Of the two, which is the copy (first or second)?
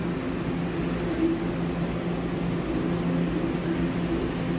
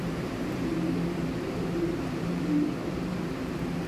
second